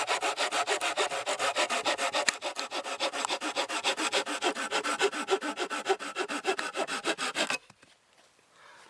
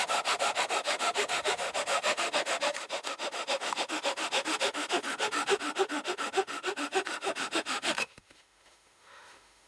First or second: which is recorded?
first